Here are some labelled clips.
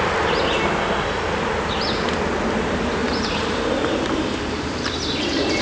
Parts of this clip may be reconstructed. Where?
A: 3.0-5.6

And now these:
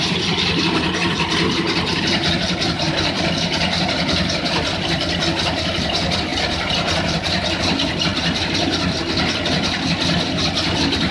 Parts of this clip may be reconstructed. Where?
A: 0.0-11.1

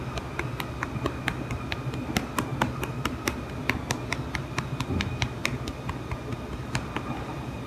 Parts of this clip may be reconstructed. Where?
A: none

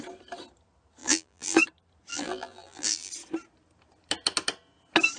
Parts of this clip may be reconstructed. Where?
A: 1.0-1.6; 2.1-3.1

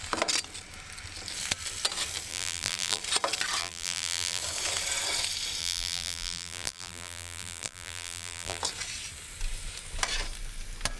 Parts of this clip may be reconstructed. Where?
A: 2.3-3.0; 3.6-4.4; 5.6-8.6

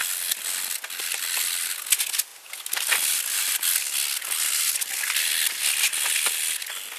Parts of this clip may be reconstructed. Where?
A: none

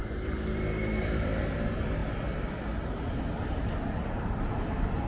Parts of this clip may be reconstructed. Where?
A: 0.0-1.4; 2.0-2.6

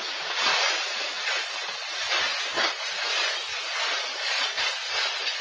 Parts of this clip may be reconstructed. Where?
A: 0.0-0.5; 1.3-5.4